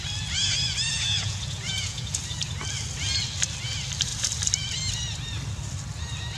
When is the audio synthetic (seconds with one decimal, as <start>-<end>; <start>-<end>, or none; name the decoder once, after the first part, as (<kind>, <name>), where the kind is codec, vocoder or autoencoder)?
0.9-2.2 (vocoder, Vocos)